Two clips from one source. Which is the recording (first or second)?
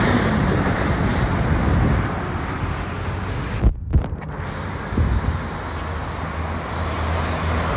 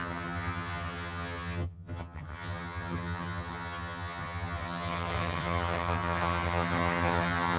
first